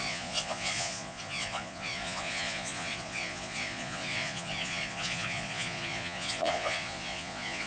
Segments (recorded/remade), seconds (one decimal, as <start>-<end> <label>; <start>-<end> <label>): 0.0-7.7 remade

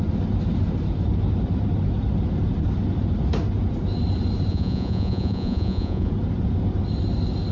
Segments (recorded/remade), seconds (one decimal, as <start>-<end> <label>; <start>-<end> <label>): 0.0-4.5 recorded; 4.5-6.1 remade; 6.1-7.5 recorded